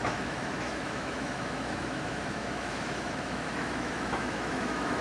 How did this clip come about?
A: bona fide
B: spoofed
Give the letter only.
B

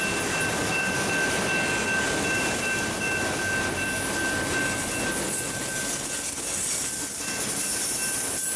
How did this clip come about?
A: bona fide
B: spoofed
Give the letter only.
A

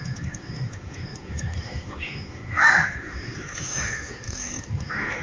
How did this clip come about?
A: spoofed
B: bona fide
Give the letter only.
A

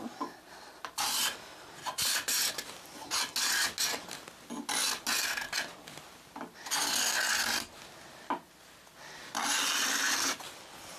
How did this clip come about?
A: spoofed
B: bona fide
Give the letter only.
B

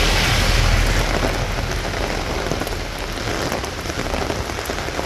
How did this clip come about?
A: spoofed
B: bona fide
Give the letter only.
B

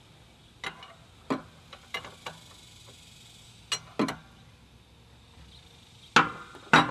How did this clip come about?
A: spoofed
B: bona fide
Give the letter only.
B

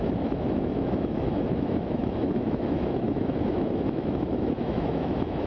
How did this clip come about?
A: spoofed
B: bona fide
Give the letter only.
A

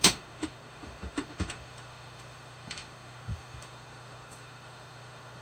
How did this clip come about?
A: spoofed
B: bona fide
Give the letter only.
A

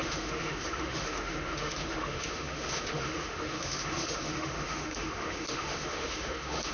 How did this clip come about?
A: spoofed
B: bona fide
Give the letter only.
A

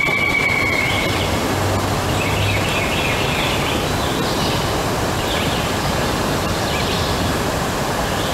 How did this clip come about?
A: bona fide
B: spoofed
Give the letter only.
A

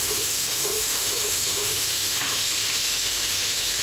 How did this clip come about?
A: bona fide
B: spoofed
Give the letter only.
B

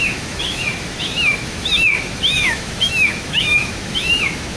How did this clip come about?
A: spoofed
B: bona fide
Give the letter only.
A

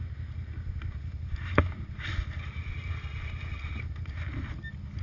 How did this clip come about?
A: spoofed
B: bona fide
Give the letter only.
B